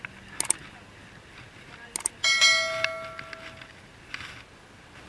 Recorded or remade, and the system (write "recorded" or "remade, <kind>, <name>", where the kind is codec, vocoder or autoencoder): recorded